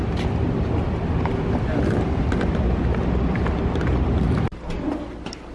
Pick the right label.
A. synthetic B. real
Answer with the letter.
B